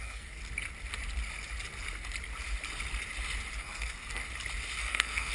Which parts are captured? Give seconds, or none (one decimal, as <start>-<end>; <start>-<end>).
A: 0.4-3.6; 4.2-4.8